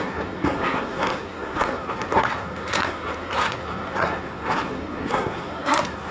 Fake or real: fake